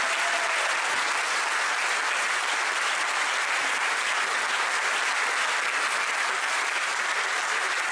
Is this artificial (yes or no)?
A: no